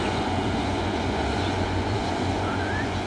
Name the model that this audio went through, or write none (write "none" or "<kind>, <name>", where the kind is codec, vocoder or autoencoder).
vocoder, Vocos